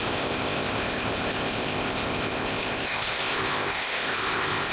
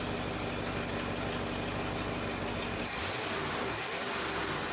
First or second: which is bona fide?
second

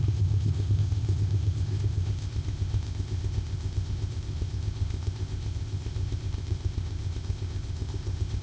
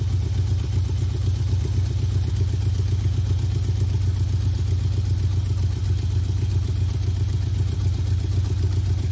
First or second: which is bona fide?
second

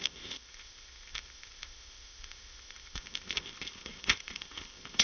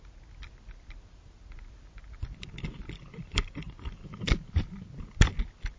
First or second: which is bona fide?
second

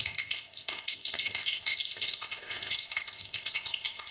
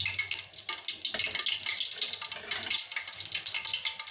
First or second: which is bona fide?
second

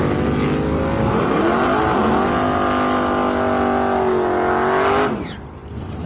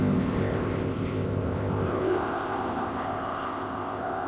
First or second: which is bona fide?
first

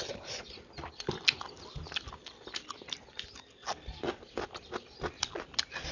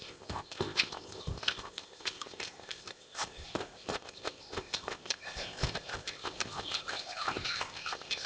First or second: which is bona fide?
first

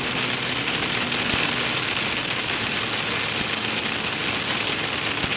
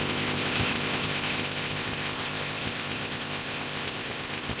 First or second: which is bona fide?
first